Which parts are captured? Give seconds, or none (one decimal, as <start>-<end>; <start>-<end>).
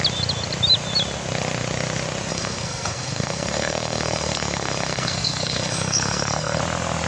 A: 0.0-2.3; 6.6-7.1